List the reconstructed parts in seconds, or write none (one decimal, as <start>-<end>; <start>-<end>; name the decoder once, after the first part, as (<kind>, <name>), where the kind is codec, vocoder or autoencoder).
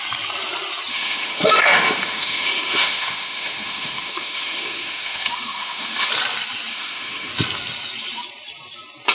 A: 0.9-6.1 (autoencoder, DAC-VAE); 6.7-7.3